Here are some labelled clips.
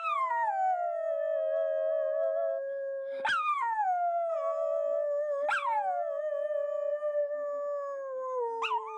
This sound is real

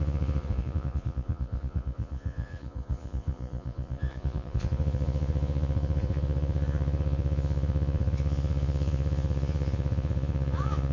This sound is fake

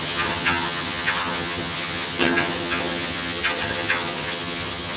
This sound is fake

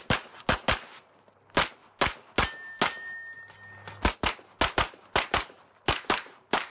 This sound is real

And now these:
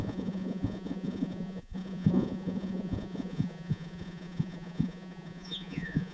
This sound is fake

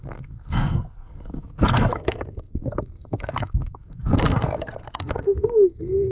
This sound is fake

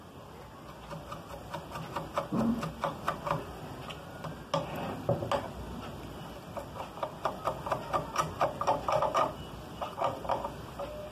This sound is real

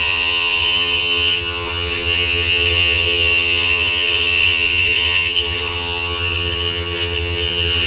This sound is fake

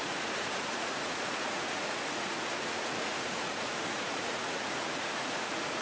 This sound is fake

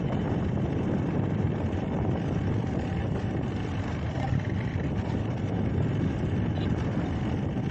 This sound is fake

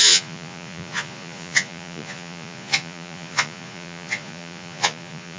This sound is fake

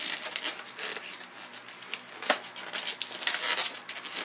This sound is real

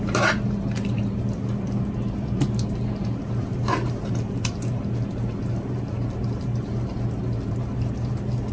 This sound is fake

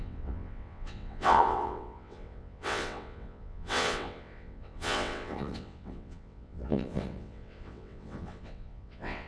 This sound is fake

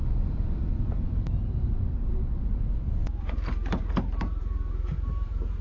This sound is fake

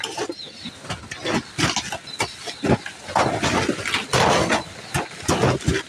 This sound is real